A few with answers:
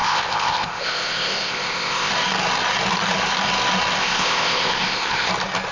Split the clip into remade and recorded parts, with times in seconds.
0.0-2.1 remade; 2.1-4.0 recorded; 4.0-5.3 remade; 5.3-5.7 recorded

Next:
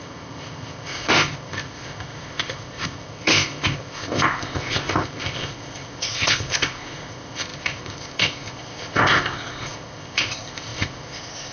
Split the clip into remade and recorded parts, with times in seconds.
0.0-11.5 remade

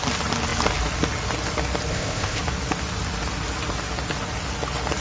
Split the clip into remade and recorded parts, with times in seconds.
0.0-1.9 recorded; 1.9-2.4 remade; 2.4-5.0 recorded